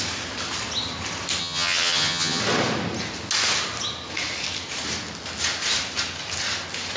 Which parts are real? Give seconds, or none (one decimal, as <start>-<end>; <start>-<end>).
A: 0.0-1.4; 2.4-7.0